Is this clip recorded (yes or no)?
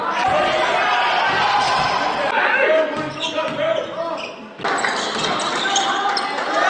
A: yes